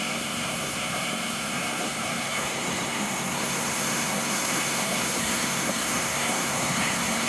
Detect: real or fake fake